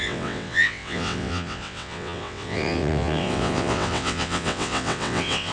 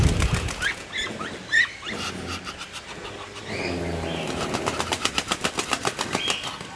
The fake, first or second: first